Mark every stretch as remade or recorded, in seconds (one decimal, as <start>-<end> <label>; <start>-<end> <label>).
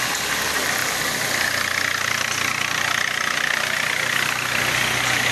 0.0-5.3 recorded